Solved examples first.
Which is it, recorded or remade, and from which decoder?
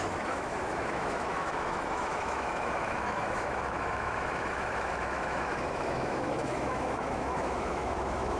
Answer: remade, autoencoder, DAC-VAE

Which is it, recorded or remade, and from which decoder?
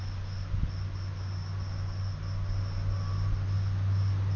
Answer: recorded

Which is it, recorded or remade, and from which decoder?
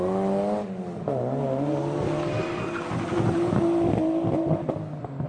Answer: recorded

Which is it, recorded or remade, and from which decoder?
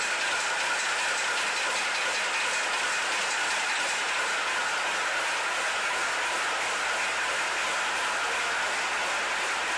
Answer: recorded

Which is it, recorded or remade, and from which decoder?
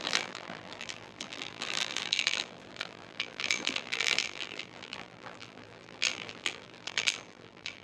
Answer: remade, vocoder, BigVGAN v2